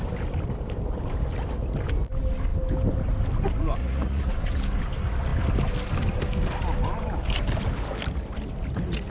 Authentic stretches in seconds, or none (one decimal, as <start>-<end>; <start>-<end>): 0.0-3.8; 4.3-9.1

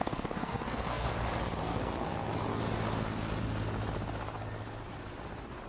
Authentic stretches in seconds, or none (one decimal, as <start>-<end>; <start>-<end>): 1.1-1.6; 2.3-5.7

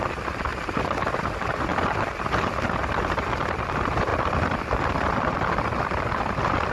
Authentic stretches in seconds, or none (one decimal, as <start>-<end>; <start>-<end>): 0.0-6.7

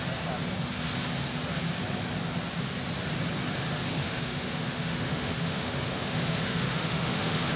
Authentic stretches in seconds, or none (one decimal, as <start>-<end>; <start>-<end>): 0.0-4.0

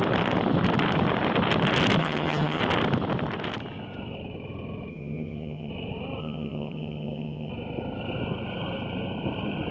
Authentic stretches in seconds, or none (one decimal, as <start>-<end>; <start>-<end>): 0.0-2.0; 2.6-4.9; 5.7-6.2; 7.5-9.7

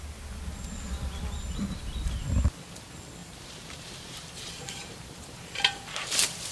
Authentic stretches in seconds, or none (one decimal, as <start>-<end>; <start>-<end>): 0.0-3.2

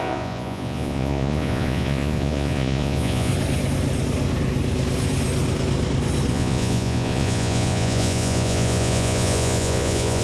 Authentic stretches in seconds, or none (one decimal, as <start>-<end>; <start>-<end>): 3.3-6.3

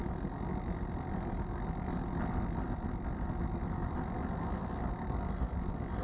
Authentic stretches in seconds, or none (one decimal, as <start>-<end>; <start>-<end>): 0.0-6.0